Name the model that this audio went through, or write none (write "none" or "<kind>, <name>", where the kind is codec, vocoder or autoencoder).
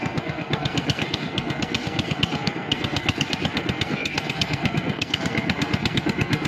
codec, SNAC